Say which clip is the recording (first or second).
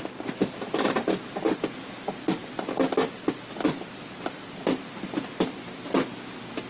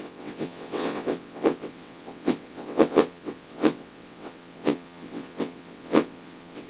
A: first